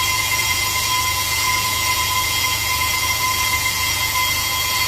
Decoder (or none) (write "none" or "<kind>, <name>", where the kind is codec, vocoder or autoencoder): vocoder, Vocos